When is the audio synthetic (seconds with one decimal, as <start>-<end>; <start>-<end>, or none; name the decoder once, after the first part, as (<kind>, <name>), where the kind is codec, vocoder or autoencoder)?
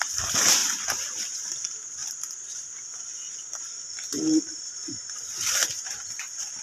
0.0-6.6 (vocoder, BigVGAN v2)